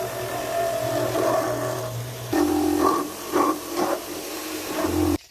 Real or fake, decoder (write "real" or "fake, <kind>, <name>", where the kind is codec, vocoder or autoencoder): fake, vocoder, BigVGAN v2